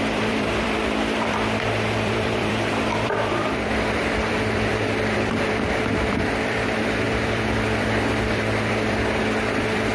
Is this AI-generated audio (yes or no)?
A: yes